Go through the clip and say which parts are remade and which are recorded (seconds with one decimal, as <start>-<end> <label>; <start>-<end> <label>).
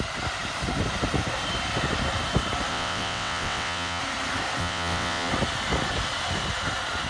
0.0-2.7 recorded; 2.7-4.0 remade; 4.0-4.6 recorded; 4.6-5.3 remade; 5.3-7.1 recorded